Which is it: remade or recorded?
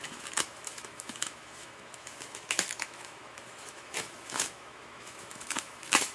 remade